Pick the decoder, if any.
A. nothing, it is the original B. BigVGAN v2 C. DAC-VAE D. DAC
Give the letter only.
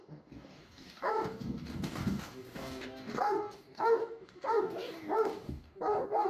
D